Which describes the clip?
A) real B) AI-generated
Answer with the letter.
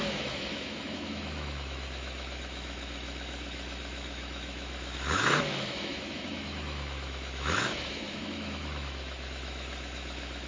B